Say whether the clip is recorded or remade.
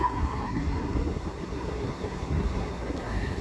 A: remade